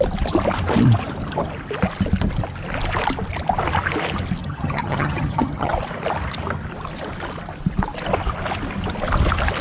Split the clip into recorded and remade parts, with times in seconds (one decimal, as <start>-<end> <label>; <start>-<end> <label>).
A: 0.0-4.4 recorded; 4.4-5.7 remade; 5.7-9.6 recorded